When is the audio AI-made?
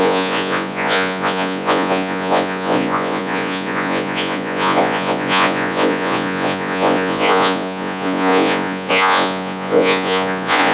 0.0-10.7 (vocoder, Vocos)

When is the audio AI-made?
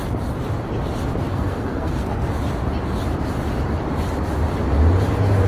1.3-2.3 (codec, SNAC)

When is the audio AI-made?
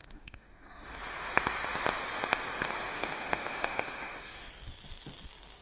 0.0-1.0 (autoencoder, DAC-VAE); 2.9-4.5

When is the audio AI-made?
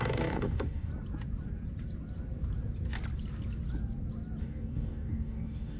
0.0-0.9 (codec, DAC); 4.4-5.8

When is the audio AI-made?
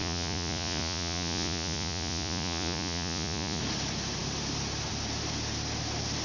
0.0-3.6 (vocoder, Vocos)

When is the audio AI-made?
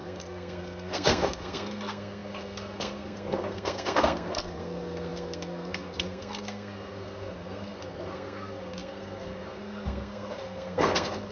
0.0-11.3 (codec, SNAC)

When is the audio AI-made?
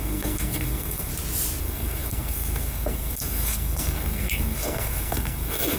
0.0-1.1 (codec, SNAC); 1.6-5.8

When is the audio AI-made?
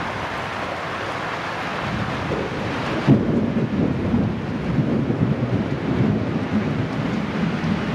1.7-6.4 (vocoder, BigVGAN v2)